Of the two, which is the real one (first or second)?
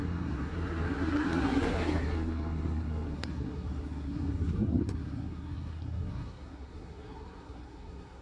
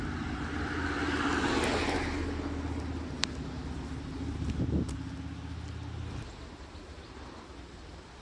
second